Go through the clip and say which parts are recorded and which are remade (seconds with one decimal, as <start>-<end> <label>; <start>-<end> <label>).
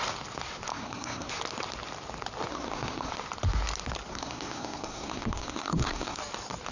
0.0-0.7 recorded; 0.7-1.3 remade; 1.3-2.5 recorded; 2.5-3.1 remade; 3.1-4.1 recorded; 4.1-6.2 remade; 6.2-6.7 recorded